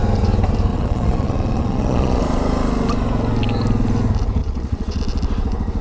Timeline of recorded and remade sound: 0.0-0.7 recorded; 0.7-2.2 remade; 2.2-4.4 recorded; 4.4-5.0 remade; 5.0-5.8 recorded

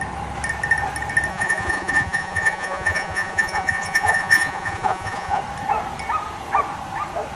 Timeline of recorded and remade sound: 0.0-1.3 recorded; 1.3-5.4 remade; 5.4-7.4 recorded

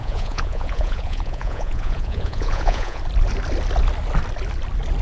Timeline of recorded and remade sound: 0.0-3.0 remade; 3.0-5.0 recorded